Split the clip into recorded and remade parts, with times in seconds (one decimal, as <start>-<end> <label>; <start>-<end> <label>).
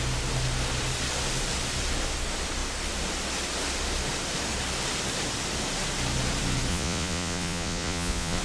0.0-6.7 recorded; 6.7-8.4 remade